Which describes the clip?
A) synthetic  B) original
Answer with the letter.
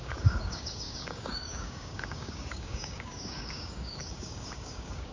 A